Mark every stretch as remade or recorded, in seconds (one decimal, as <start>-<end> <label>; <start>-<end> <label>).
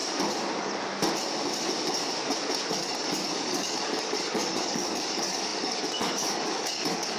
0.0-2.7 recorded; 2.7-7.2 remade